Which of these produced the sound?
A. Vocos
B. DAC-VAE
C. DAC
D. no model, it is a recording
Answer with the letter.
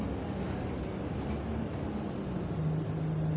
D